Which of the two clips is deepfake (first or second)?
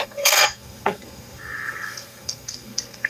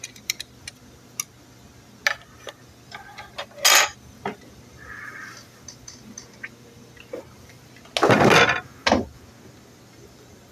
first